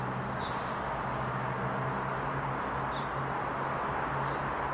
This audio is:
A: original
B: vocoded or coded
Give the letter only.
A